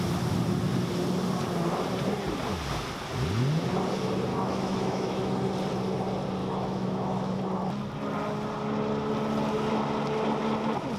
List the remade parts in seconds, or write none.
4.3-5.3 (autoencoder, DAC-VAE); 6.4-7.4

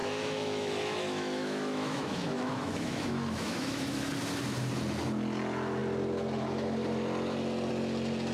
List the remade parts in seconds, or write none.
0.0-4.1 (autoencoder, DAC-VAE)